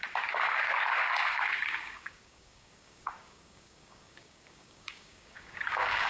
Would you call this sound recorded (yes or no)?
no